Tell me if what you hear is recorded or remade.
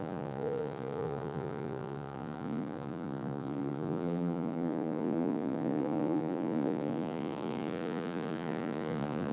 remade